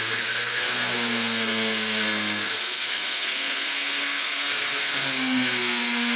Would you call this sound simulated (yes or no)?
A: yes